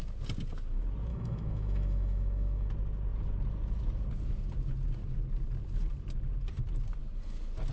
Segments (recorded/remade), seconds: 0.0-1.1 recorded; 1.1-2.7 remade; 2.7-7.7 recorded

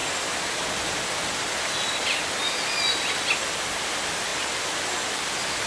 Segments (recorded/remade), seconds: 0.0-5.7 recorded

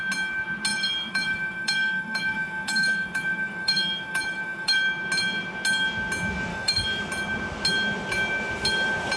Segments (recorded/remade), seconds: 0.0-0.7 recorded; 0.7-4.8 remade; 4.8-6.5 recorded; 6.5-7.0 remade; 7.0-9.2 recorded

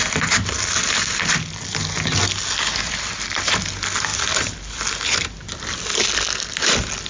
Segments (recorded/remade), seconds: 0.0-7.1 recorded

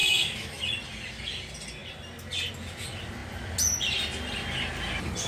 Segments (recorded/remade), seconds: 0.0-0.6 remade; 0.6-5.3 recorded